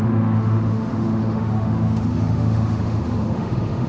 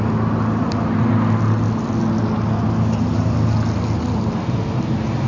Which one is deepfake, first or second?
first